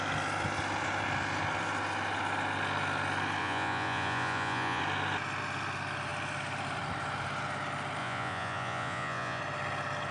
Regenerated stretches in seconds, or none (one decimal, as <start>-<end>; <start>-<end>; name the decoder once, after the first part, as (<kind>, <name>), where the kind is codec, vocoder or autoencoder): 3.4-4.8 (vocoder, Vocos); 8.0-9.4